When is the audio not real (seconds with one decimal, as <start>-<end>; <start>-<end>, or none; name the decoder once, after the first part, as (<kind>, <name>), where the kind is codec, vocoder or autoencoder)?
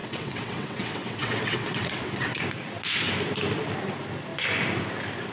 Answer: 0.0-2.4 (vocoder, WaveNeXt)